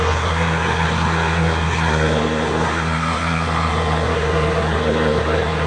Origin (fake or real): fake